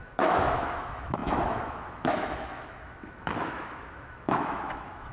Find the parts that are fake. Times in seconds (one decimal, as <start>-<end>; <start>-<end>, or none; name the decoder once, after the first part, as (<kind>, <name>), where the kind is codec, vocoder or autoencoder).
0.0-5.1 (autoencoder, DAC-VAE)